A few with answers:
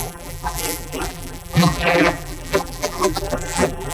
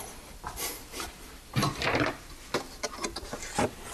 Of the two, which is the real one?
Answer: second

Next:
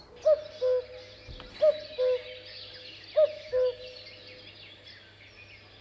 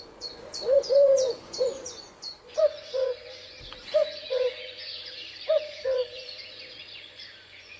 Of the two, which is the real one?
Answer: first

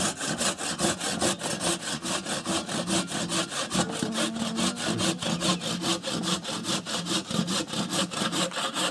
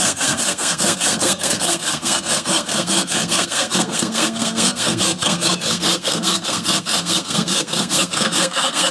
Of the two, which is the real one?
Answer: first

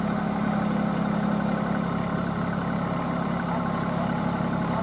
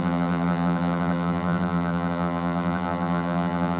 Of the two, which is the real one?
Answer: first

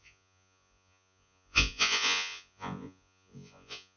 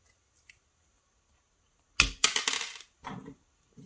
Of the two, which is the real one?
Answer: second